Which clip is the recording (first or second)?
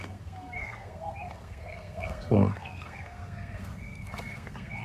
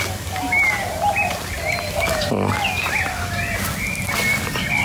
second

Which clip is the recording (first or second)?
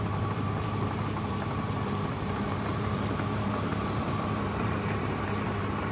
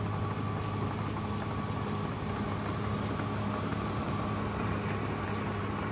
second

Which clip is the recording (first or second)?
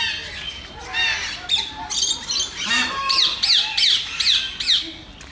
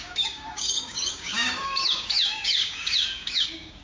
first